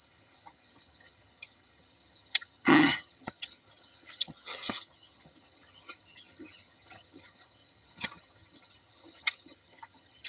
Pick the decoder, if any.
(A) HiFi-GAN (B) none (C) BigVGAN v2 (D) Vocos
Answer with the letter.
A